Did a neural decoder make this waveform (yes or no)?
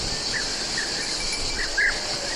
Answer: no